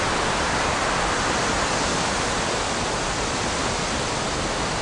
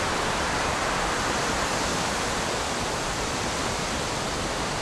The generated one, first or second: second